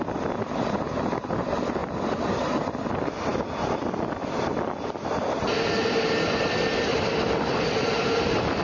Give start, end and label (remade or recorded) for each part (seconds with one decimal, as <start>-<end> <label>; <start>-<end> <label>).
0.0-1.8 recorded; 1.8-2.9 remade; 2.9-3.3 recorded; 3.3-7.8 remade; 7.8-8.6 recorded